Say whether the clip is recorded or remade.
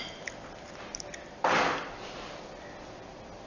recorded